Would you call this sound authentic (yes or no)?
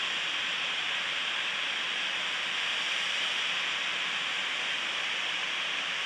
no